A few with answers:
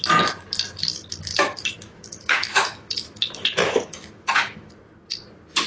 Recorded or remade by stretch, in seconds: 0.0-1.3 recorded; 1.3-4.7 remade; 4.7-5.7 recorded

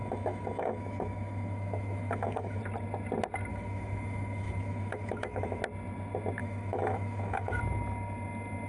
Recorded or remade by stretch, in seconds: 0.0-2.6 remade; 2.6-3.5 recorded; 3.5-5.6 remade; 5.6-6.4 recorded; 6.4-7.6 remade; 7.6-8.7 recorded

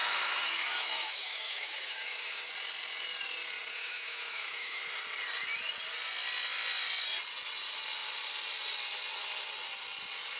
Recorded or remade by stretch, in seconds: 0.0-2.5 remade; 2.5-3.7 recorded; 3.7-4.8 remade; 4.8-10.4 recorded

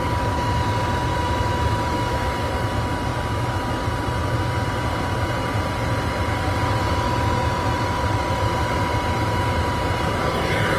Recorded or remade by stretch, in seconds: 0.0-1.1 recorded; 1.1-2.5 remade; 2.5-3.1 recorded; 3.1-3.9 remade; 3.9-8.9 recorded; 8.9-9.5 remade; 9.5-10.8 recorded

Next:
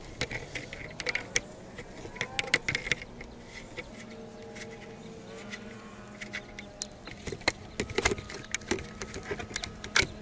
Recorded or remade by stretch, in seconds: 0.0-10.2 recorded

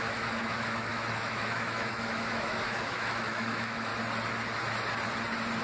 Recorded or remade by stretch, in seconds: 0.0-3.9 remade; 3.9-5.6 recorded

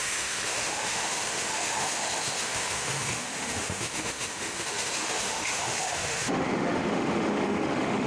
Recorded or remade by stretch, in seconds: 0.0-8.1 remade